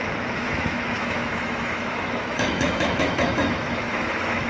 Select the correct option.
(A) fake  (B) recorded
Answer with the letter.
A